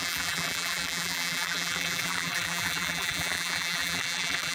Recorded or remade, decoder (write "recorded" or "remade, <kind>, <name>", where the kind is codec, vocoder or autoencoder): remade, vocoder, BigVGAN v2